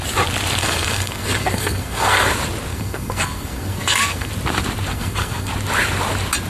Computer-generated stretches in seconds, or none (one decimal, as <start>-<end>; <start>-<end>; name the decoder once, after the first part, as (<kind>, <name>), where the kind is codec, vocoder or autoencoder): 0.6-2.3 (codec, SNAC); 2.7-4.3; 4.9-5.5